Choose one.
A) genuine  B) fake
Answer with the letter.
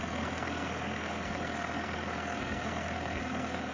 B